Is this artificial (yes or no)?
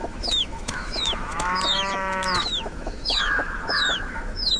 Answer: yes